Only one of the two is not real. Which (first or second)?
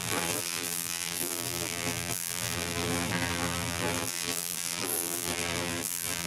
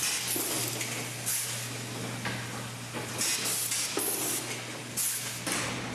first